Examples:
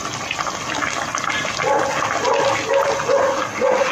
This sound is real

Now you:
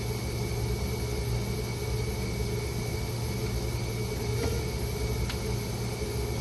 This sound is real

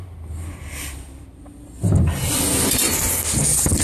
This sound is real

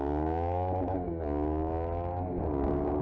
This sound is fake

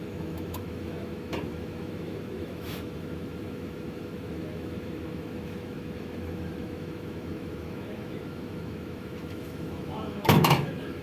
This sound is fake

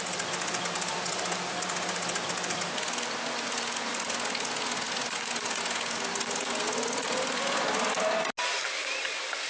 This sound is real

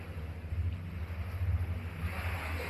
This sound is real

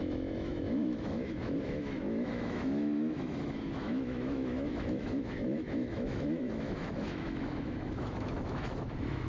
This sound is fake